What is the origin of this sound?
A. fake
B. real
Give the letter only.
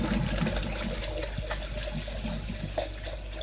B